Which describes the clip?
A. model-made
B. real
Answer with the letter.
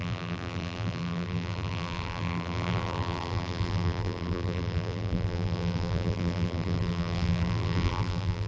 A